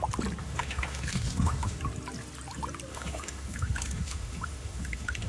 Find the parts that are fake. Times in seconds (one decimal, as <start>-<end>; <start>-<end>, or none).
0.4-1.8; 2.9-5.3